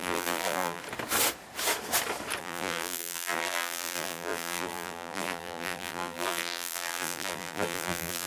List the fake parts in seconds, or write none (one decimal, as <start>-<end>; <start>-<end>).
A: 0.0-0.8; 2.4-8.3